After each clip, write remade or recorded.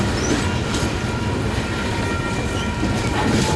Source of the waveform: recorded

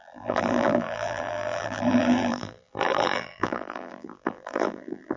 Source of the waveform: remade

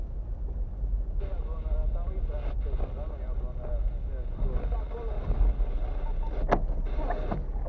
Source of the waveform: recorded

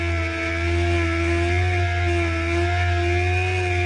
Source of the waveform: recorded